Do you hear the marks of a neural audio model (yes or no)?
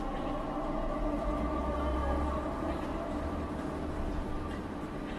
yes